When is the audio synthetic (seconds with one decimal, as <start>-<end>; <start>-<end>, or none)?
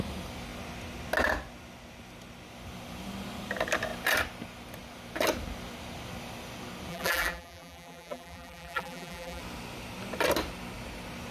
6.9-9.4